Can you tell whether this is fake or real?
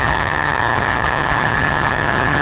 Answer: fake